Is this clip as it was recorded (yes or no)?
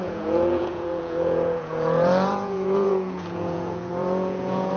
no